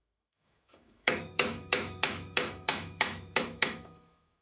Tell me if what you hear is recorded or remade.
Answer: remade